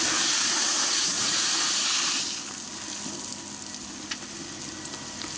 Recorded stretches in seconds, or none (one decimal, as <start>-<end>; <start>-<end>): 0.0-0.9; 1.6-5.4